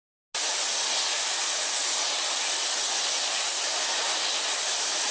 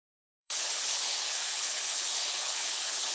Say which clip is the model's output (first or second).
second